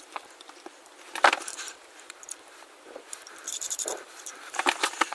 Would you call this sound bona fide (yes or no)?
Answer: no